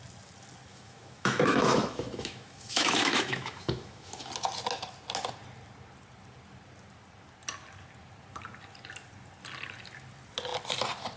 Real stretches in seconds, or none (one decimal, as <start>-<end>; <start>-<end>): 0.0-0.7; 4.3-11.2